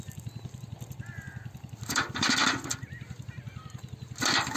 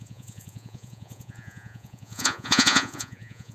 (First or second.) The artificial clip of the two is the second